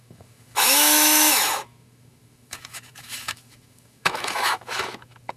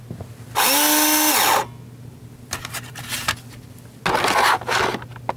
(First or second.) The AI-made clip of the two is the first